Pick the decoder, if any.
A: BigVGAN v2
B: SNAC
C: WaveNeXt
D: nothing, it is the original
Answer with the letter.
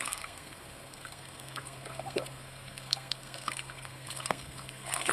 B